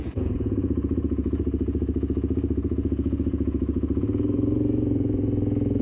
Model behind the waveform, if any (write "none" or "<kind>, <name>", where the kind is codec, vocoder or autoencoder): vocoder, Vocos